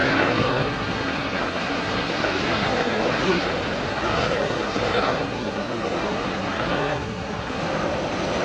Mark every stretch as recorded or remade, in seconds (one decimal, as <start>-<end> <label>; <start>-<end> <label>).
0.0-3.5 remade; 3.5-3.9 recorded; 3.9-7.6 remade; 7.6-8.4 recorded